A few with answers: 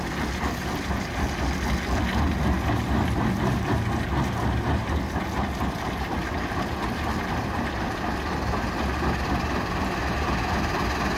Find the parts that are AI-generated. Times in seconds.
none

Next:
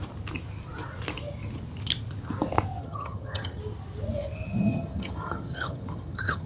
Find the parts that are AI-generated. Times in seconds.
2.8-3.6 (vocoder, HiFi-GAN); 4.7-6.5

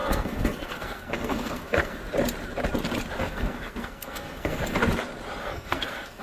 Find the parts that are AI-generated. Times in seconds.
0.0-2.0 (codec, SNAC); 3.2-4.8; 5.4-6.2

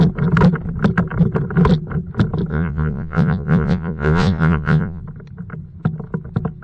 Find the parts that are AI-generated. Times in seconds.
2.5-5.0 (vocoder, Vocos)

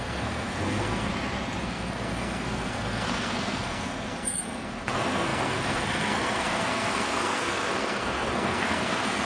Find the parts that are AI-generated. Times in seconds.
0.0-1.1 (codec, SNAC); 1.6-9.2

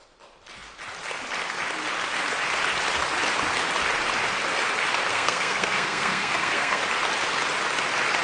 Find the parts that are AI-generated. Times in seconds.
5.1-6.8 (codec, SNAC)

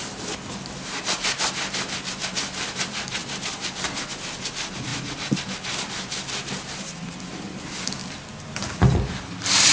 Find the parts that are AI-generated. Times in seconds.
none